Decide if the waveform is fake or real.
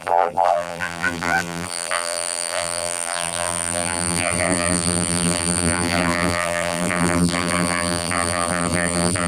fake